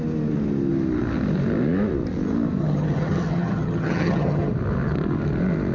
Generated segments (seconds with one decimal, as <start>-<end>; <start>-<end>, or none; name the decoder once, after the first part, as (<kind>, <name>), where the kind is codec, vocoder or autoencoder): 2.6-4.5 (vocoder, HiFi-GAN)